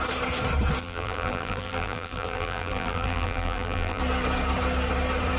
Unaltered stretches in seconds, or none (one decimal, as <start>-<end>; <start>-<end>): 0.0-0.8; 4.0-5.4